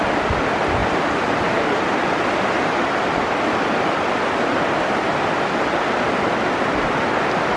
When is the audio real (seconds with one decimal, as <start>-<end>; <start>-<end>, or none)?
0.0-7.6